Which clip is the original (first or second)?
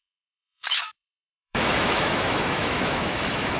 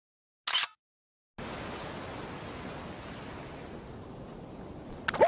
second